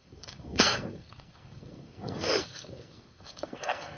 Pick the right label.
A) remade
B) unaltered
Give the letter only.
A